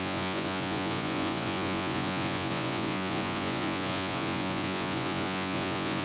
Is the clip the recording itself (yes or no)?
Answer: no